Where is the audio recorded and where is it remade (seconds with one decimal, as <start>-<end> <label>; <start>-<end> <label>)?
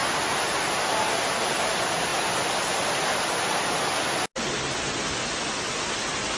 0.0-6.4 recorded